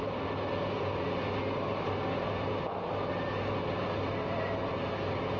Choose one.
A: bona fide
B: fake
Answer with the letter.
A